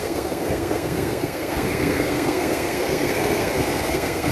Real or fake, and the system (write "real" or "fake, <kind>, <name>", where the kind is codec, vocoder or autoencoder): fake, codec, SNAC